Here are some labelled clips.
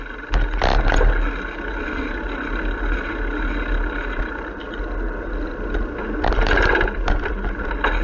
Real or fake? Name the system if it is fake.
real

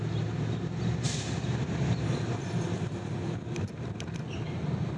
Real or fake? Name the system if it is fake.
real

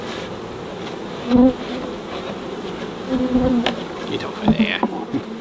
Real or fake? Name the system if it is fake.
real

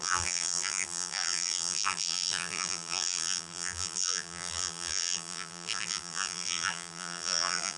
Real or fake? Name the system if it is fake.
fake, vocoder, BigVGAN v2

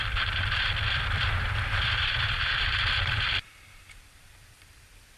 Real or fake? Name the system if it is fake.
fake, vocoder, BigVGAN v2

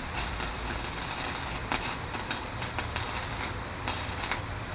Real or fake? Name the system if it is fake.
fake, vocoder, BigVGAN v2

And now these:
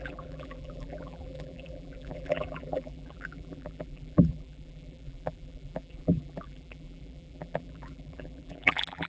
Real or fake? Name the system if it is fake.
fake, vocoder, BigVGAN v2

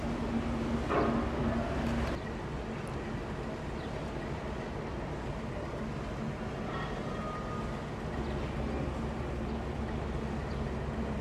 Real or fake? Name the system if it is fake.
real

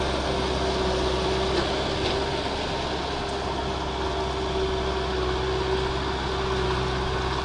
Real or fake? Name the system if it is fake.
real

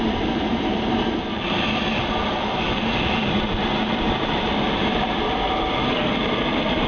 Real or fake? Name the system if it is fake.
fake, vocoder, BigVGAN v2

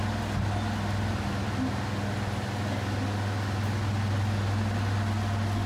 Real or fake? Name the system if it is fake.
real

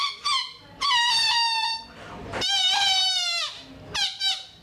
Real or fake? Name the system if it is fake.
real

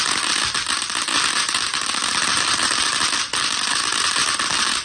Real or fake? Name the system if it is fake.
real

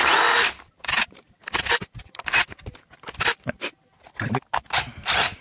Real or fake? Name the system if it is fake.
fake, vocoder, BigVGAN v2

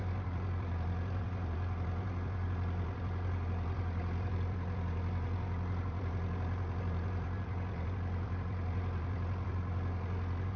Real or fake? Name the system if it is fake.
fake, vocoder, BigVGAN v2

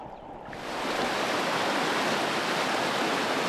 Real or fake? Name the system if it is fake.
real